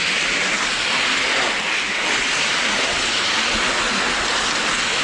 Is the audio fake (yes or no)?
no